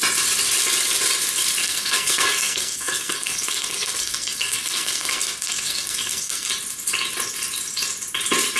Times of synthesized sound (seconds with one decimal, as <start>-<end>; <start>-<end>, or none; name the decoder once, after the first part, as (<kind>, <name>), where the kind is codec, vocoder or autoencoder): 1.6-6.5 (codec, SNAC)